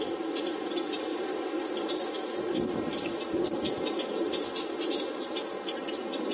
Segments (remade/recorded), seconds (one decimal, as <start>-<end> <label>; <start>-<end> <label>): 0.0-6.3 recorded